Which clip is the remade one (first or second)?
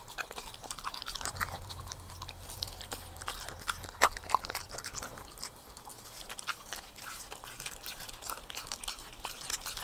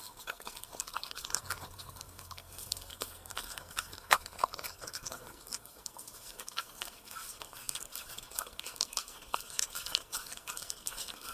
second